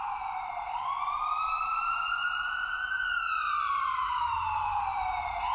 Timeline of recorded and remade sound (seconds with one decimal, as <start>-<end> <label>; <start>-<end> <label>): 0.0-3.9 recorded; 3.9-4.8 remade; 4.8-5.5 recorded